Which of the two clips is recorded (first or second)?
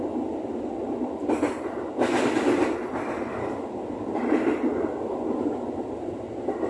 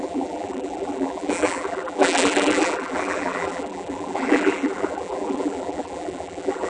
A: first